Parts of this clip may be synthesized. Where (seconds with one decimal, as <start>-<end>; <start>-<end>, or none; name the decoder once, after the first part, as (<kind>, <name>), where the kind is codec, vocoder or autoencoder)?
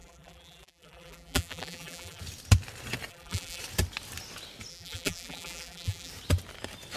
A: 0.0-2.2 (vocoder, BigVGAN v2); 3.1-3.6; 4.7-6.1